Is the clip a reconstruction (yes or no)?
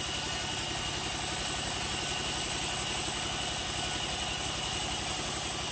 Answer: no